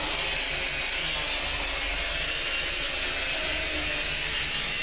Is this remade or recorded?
recorded